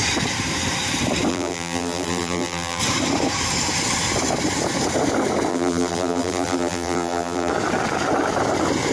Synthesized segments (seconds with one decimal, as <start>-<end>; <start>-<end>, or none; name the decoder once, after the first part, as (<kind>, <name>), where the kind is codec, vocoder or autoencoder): 1.3-2.8 (vocoder, BigVGAN v2); 5.5-7.5